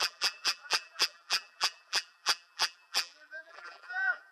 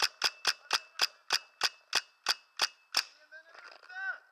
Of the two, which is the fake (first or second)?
first